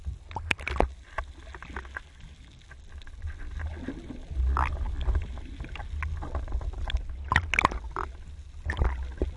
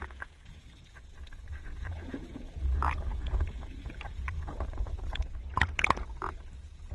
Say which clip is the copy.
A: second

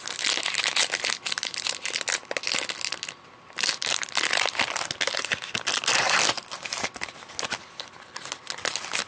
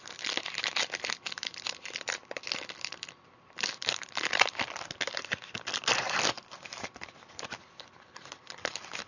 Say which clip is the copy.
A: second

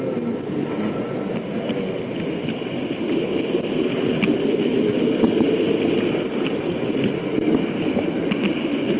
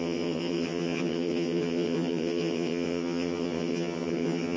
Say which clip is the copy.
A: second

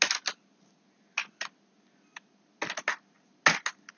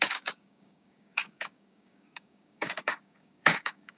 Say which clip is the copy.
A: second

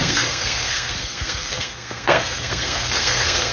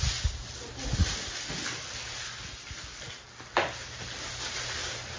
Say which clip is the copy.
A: first